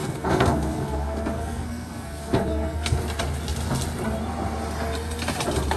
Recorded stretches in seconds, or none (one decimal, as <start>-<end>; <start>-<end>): 3.0-5.8